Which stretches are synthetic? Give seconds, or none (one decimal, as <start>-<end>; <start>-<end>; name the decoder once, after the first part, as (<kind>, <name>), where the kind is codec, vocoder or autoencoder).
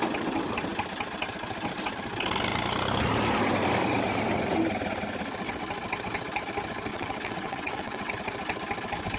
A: 6.9-8.1 (vocoder, WaveNeXt)